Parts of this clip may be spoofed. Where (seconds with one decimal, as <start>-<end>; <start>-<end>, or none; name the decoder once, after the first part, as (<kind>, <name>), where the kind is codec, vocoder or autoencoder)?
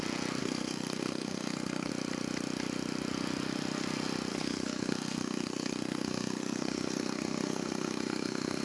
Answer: 0.4-1.9 (codec, SNAC); 4.3-8.6